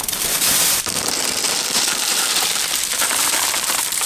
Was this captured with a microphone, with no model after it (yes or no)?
no